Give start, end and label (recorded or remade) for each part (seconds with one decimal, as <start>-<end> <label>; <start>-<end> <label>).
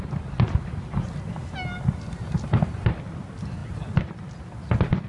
0.0-5.1 recorded